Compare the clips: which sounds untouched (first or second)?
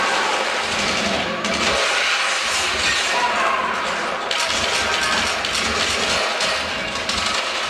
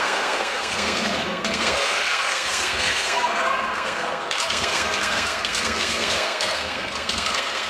first